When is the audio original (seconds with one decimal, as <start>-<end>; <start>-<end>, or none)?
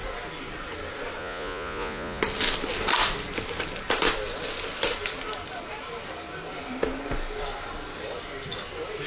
0.0-1.2; 2.2-9.1